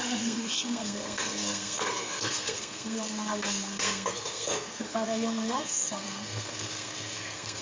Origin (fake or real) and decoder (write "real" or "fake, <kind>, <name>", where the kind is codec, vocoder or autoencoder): fake, codec, SNAC